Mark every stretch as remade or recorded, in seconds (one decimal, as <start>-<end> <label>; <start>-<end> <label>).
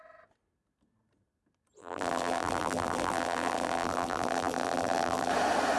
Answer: 0.0-1.8 recorded; 1.8-5.3 remade; 5.3-5.8 recorded